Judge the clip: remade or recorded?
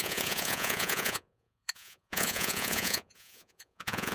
remade